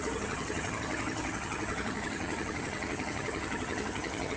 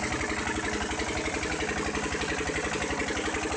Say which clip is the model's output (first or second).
first